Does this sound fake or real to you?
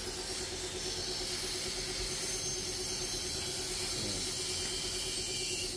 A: real